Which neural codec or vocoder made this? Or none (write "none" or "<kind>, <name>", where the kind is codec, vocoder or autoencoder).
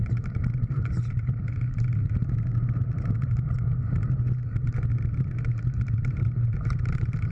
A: vocoder, BigVGAN v2